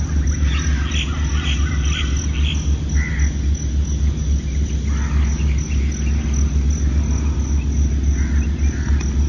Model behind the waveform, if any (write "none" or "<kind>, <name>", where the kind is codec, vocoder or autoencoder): none